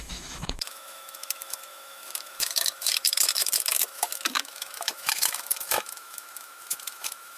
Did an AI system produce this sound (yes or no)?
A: yes